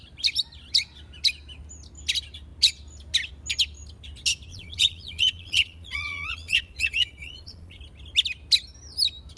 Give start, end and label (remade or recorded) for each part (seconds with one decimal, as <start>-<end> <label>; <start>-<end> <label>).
0.0-4.5 recorded; 4.5-7.8 remade; 7.8-9.4 recorded